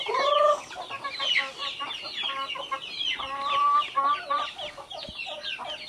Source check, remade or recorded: recorded